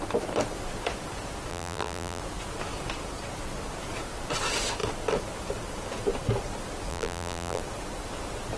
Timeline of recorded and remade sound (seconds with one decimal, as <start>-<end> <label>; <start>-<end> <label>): 0.0-1.5 recorded; 1.5-2.2 remade; 2.2-6.9 recorded; 6.9-7.6 remade; 7.6-8.6 recorded